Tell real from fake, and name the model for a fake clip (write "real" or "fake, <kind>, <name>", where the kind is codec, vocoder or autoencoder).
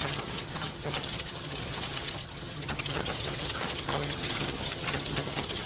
fake, vocoder, HiFi-GAN